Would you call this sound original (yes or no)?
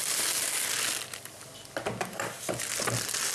yes